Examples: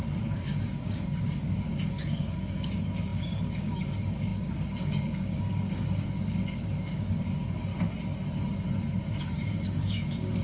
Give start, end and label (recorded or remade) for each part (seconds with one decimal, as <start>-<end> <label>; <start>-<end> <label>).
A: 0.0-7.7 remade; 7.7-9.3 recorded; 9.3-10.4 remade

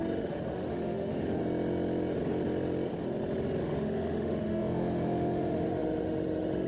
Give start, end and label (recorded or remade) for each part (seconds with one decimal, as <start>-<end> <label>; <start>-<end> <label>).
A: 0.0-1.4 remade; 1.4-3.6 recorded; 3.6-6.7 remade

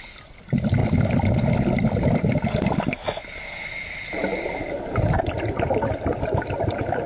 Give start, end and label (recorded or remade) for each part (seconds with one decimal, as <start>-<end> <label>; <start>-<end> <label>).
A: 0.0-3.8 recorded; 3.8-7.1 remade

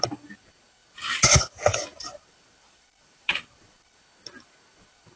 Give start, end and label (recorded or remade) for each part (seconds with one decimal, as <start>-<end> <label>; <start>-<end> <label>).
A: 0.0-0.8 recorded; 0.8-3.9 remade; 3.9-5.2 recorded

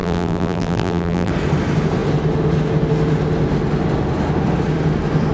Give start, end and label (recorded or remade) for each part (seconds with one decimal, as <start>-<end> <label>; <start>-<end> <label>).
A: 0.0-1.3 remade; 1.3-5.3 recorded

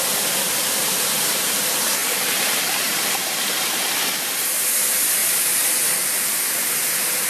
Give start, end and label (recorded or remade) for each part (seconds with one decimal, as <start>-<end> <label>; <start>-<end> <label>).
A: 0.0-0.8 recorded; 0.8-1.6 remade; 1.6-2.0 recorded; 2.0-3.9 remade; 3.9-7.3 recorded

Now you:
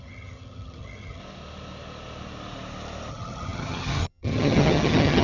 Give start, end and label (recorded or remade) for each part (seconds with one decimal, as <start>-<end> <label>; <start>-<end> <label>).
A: 0.0-1.2 remade; 1.2-3.1 recorded; 3.1-5.2 remade

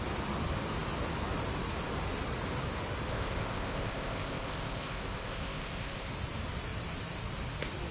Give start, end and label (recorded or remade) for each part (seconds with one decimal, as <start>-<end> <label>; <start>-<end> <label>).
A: 0.0-3.1 recorded; 3.1-6.1 remade; 6.1-7.9 recorded